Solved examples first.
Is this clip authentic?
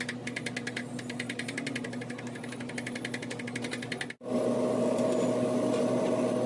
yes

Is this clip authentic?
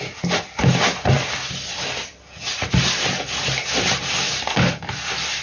no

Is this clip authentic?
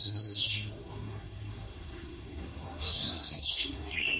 no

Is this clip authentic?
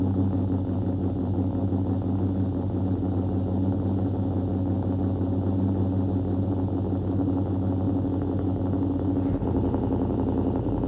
yes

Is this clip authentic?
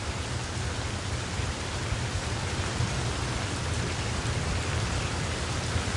yes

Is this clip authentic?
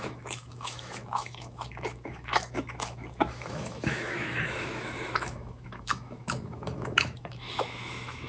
no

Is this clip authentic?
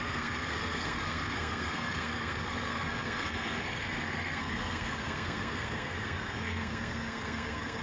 no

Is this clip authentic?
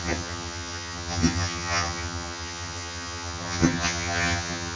no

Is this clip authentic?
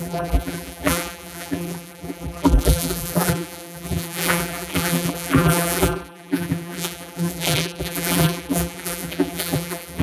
no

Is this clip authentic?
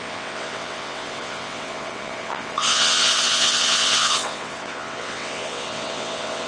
no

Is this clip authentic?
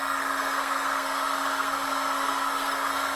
no